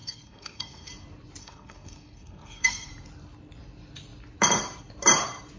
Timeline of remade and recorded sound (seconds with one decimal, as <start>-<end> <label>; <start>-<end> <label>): 0.0-0.9 remade; 0.9-1.4 recorded; 1.4-2.9 remade; 2.9-5.6 recorded